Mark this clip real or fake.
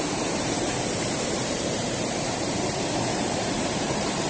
fake